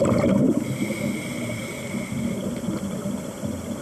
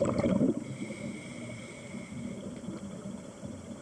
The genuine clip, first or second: first